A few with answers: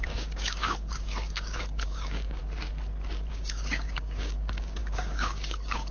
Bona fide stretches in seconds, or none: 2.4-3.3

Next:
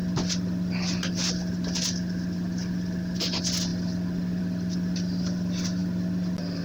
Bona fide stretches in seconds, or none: 0.0-6.6

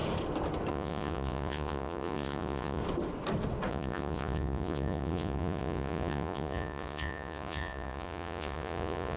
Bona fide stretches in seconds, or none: 0.0-0.7; 2.8-3.7